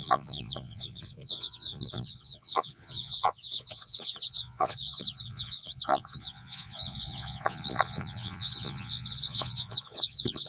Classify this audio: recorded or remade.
remade